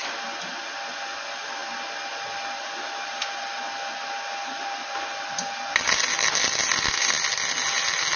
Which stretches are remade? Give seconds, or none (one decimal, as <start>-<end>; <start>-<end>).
none